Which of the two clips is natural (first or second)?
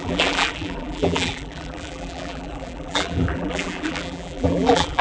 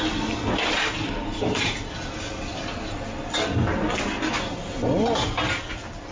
second